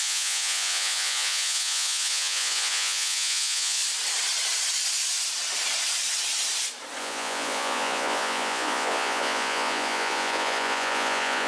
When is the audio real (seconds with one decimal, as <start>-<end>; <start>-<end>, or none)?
3.8-7.0